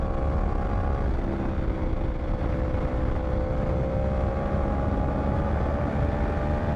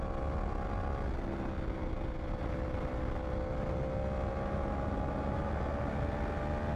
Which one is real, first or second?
second